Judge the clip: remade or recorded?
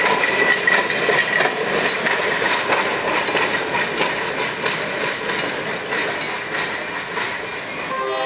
recorded